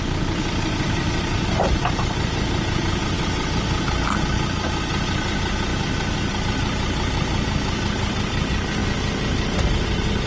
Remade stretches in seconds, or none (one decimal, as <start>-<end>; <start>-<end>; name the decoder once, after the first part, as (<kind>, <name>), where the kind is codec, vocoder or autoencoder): none